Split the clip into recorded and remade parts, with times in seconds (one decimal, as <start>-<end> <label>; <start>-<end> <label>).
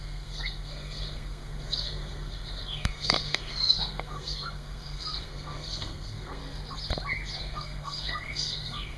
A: 0.0-6.4 remade; 6.4-7.4 recorded; 7.4-9.0 remade